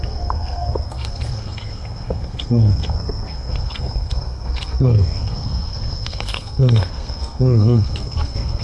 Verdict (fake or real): fake